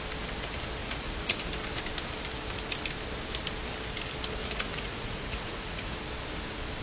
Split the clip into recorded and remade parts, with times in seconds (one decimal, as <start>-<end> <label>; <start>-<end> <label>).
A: 0.0-0.8 recorded; 0.8-1.4 remade; 1.4-4.4 recorded; 4.4-5.9 remade; 5.9-6.8 recorded